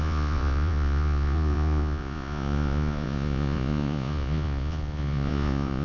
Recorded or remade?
remade